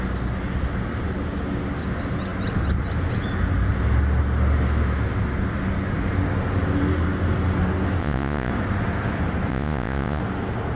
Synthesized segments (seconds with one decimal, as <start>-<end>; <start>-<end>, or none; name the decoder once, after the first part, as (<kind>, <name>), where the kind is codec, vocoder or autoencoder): 8.0-8.5 (vocoder, Vocos); 9.5-10.2